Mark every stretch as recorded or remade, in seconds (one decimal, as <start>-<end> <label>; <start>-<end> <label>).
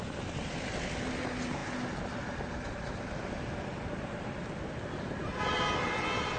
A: 0.0-6.4 recorded